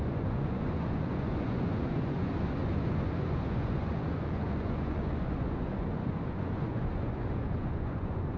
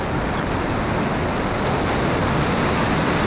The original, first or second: second